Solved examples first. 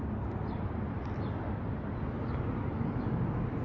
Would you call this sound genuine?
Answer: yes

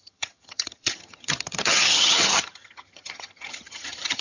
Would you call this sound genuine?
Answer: no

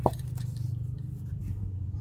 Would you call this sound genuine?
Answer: no